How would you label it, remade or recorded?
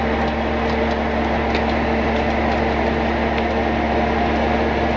recorded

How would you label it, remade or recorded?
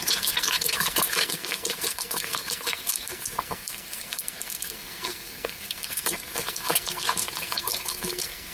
remade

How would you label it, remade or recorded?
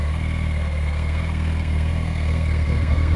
remade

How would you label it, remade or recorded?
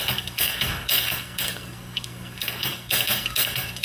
remade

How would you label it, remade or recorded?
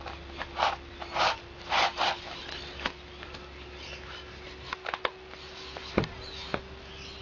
recorded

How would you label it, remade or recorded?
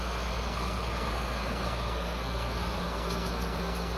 remade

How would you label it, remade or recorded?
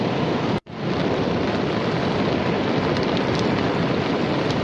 recorded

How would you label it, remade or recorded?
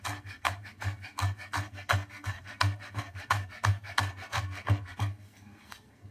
remade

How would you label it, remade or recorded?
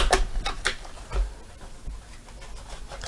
recorded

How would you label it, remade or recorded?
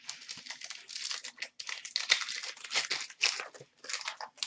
recorded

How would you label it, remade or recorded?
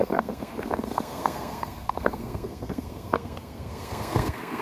remade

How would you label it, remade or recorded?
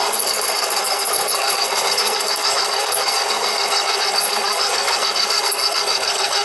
remade